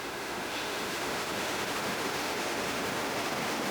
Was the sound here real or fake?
fake